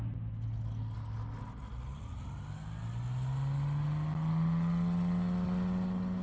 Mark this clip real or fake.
real